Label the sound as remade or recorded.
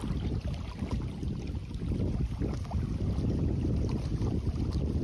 recorded